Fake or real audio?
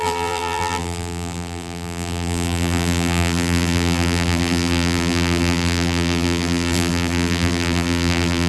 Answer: fake